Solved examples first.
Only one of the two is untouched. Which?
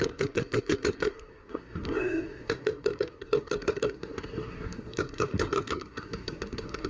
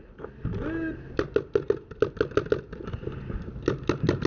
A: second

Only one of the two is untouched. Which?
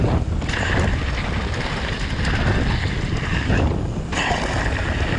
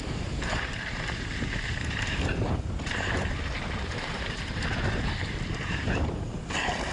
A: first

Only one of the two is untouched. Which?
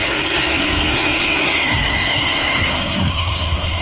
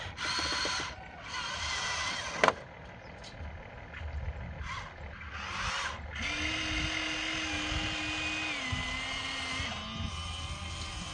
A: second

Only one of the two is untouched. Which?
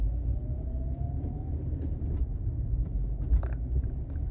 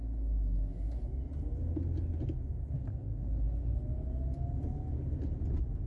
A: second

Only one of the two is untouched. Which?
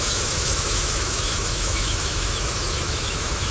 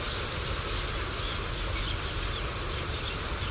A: second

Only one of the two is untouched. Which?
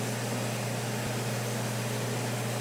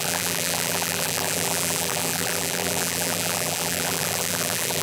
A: first